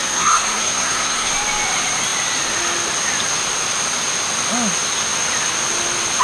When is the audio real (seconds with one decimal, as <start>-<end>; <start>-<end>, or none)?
1.3-6.2